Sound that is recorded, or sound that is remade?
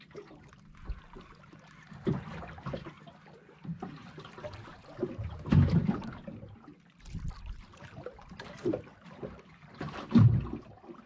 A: recorded